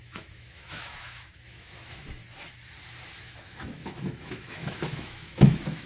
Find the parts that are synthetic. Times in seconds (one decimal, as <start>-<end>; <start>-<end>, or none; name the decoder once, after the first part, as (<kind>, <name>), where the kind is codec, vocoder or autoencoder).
0.0-2.2 (autoencoder, DAC-VAE); 3.0-5.9